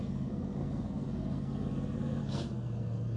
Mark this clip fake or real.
fake